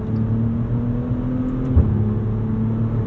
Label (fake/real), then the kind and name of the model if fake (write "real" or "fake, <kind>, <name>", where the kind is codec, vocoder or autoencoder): real